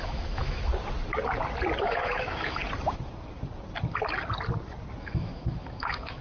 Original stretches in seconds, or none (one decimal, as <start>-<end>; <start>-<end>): 0.7-1.8; 2.6-5.0